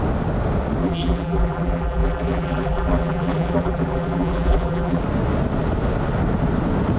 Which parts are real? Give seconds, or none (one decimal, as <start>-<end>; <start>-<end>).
0.0-0.8; 5.0-7.0